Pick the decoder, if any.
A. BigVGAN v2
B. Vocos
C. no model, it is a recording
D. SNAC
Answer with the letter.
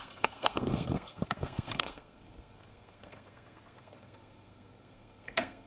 D